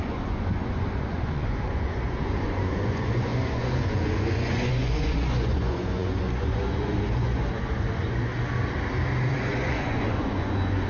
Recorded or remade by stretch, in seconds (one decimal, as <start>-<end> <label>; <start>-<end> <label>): 0.0-8.3 remade; 8.3-9.3 recorded; 9.3-10.9 remade